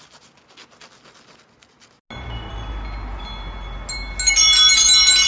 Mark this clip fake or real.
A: real